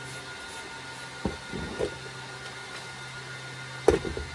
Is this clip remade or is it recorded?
recorded